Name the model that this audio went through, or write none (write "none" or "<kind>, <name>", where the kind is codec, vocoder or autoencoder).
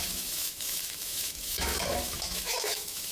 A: autoencoder, DAC-VAE